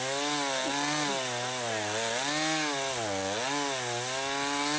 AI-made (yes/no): no